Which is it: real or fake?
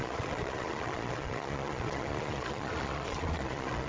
fake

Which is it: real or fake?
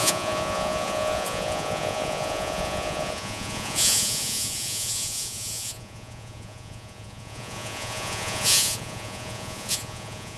fake